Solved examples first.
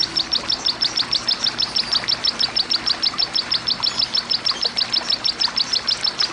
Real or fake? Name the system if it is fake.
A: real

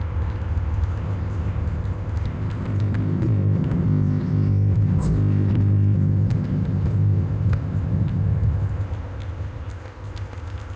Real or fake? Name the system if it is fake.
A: fake, codec, ZipCodec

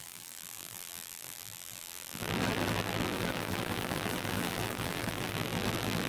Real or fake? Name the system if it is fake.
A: fake, vocoder, BigVGAN v2